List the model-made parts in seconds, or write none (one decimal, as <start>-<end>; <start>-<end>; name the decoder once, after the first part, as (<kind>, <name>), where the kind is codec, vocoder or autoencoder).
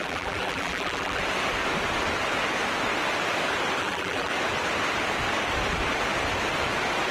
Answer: 0.0-1.2 (vocoder, BigVGAN v2); 3.8-4.3